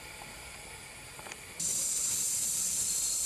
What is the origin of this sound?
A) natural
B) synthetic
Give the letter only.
B